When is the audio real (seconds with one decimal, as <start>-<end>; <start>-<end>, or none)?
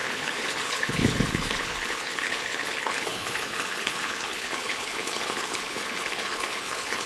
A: none